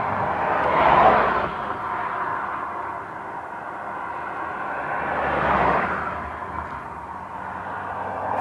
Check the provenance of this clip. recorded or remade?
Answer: recorded